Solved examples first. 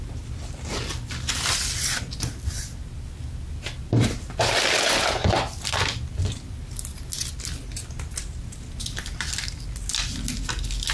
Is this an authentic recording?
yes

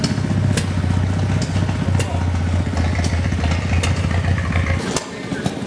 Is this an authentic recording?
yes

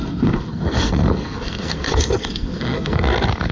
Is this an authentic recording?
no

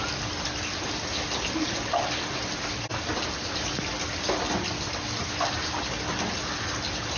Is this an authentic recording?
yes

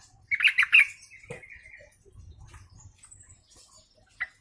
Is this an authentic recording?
yes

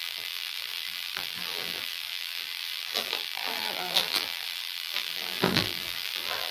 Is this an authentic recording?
no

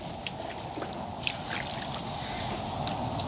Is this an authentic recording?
yes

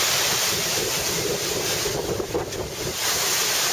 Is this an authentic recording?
yes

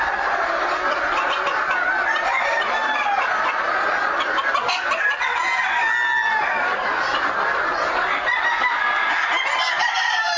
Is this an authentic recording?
yes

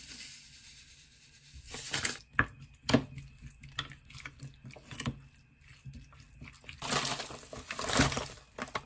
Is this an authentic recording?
yes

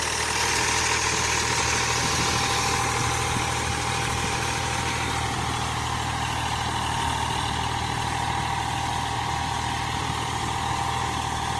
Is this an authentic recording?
yes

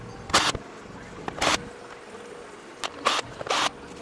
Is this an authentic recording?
yes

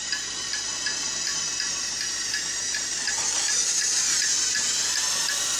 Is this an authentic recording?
yes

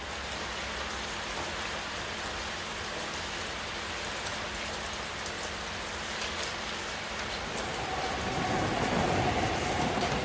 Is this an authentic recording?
yes